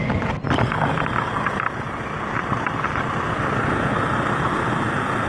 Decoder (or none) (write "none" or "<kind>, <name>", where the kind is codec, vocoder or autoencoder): vocoder, BigVGAN v2